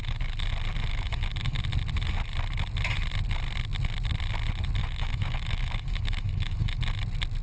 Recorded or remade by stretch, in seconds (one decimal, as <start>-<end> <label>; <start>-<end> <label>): 0.0-0.9 recorded; 0.9-1.6 remade; 1.6-4.8 recorded; 4.8-6.8 remade; 6.8-7.4 recorded